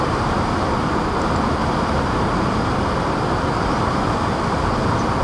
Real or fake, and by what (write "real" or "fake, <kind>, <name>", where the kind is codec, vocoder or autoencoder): real